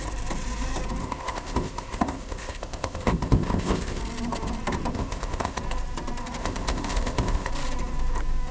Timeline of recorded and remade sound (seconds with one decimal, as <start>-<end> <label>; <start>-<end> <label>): 0.0-1.0 recorded; 1.0-4.0 remade; 4.0-4.9 recorded; 4.9-5.6 remade; 5.6-6.4 recorded; 6.4-7.5 remade; 7.5-8.5 recorded